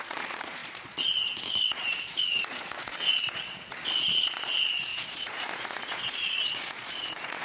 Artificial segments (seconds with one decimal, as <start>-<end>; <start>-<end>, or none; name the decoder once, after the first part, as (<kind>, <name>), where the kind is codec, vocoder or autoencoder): 0.0-7.4 (vocoder, Vocos)